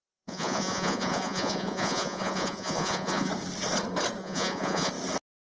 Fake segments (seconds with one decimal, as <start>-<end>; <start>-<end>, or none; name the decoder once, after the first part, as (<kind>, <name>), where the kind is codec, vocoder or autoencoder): 0.0-3.3 (vocoder, Vocos); 4.2-4.9